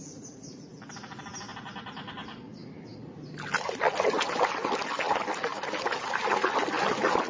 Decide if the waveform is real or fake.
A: real